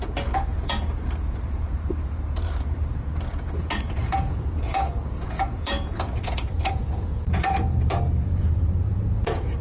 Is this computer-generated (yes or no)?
yes